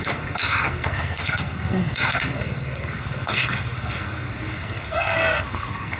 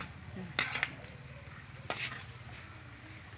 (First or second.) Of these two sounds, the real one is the second